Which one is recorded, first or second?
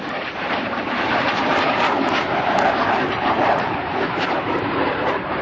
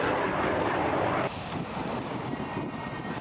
second